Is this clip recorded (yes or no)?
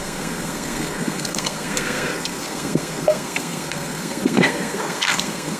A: no